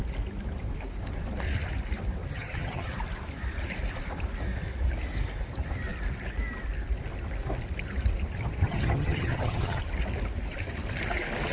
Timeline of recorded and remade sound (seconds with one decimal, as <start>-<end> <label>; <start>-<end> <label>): 0.0-2.2 recorded; 2.2-2.9 remade; 2.9-8.6 recorded; 8.6-9.8 remade; 9.8-11.5 recorded